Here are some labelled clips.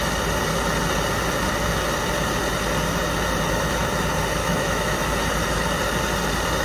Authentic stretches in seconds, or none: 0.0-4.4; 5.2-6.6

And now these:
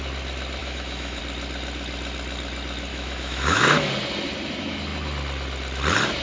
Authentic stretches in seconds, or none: 0.0-0.6; 1.2-2.9; 3.9-6.2

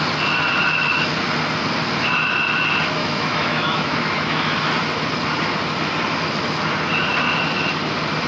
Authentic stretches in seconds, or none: 0.0-3.0; 4.7-8.3

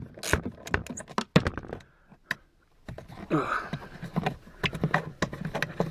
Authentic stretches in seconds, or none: 0.0-5.9

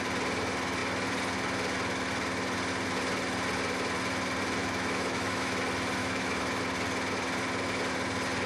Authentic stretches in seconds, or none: 0.0-4.6; 5.6-6.0; 6.6-8.5